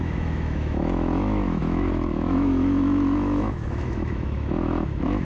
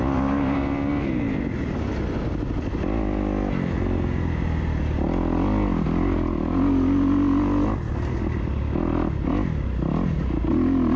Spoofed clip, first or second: first